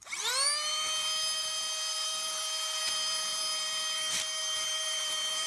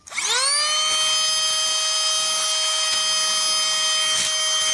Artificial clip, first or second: first